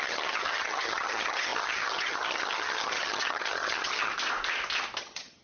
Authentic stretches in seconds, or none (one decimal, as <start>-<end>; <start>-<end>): 4.1-5.0